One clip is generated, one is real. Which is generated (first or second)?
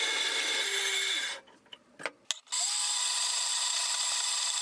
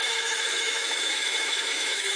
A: second